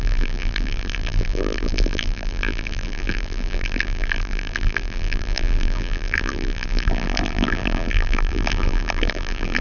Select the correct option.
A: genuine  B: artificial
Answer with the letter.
B